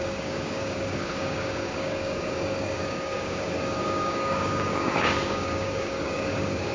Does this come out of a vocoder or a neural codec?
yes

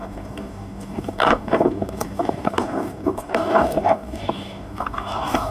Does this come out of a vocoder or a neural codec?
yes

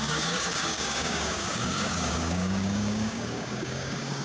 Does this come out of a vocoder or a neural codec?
yes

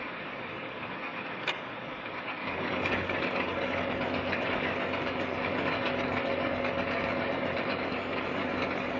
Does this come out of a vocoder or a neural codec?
yes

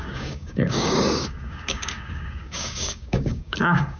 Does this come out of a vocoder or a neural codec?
yes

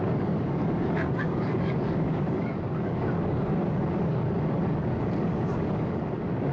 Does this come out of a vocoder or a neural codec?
yes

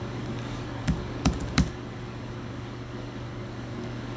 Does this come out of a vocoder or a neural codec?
yes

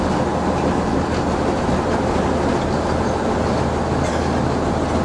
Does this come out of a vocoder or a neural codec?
no